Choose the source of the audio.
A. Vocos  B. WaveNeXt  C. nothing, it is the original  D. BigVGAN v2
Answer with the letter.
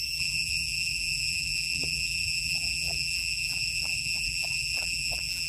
D